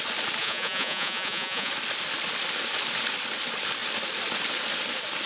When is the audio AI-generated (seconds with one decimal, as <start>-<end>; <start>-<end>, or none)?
0.4-1.7